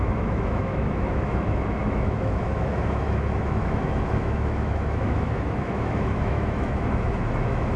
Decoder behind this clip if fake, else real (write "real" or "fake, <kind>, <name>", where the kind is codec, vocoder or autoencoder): fake, autoencoder, DAC-VAE